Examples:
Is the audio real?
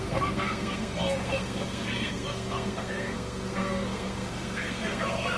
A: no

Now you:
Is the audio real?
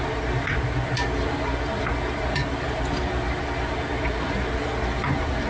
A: yes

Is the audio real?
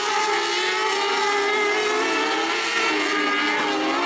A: yes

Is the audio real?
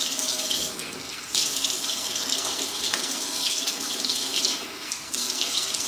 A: no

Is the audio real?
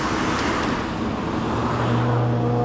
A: yes